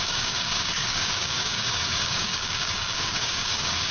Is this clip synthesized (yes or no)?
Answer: yes